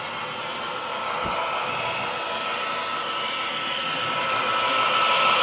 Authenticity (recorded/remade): recorded